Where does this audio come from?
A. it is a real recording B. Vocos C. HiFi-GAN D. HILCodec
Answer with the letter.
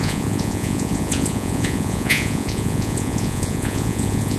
B